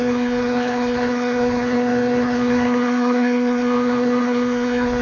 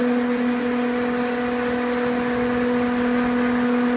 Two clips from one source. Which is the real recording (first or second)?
second